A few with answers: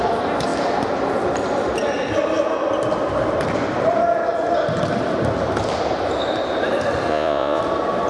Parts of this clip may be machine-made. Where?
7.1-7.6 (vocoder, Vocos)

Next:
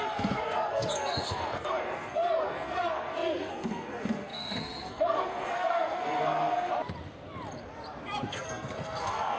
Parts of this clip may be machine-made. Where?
0.0-6.7 (codec, SNAC); 8.3-9.4

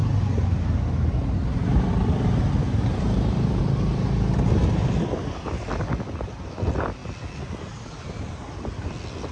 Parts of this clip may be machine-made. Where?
2.7-3.6 (vocoder, BigVGAN v2)

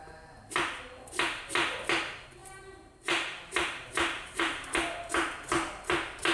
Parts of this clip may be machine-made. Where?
2.4-4.4 (vocoder, BigVGAN v2)

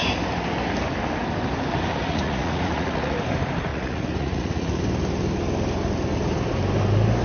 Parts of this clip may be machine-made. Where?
1.9-3.2 (vocoder, Vocos); 3.7-4.8

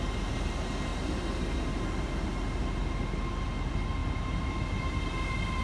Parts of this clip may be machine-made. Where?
none